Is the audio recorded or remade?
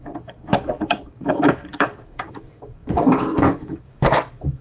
remade